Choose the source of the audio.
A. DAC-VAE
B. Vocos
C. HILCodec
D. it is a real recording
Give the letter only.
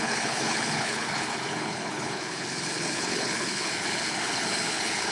C